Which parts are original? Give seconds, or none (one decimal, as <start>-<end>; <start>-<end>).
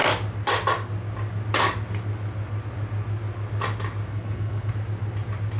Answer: 0.0-4.1; 4.7-5.6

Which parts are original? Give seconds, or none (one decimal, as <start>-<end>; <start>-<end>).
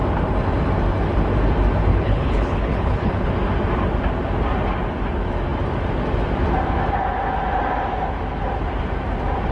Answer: 0.0-1.9; 3.3-9.5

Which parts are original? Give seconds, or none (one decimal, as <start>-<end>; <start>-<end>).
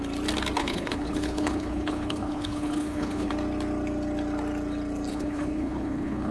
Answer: 0.0-0.6; 3.3-5.1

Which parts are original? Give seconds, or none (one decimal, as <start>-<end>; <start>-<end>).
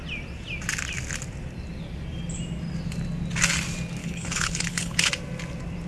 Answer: 0.0-4.0; 5.1-5.9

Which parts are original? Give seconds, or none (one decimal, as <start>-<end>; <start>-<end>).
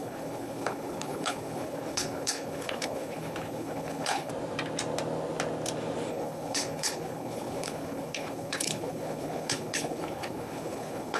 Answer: 4.3-6.1